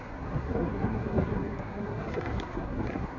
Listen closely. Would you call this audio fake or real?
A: fake